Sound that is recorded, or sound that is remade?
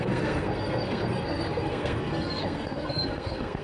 remade